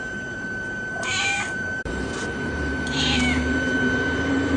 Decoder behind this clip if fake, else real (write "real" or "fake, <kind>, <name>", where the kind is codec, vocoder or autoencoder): fake, vocoder, BigVGAN v2